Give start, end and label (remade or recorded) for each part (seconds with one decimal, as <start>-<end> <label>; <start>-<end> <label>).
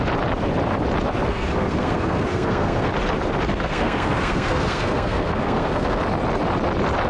0.0-1.3 recorded; 1.3-2.9 remade; 2.9-3.5 recorded; 3.5-6.0 remade; 6.0-7.1 recorded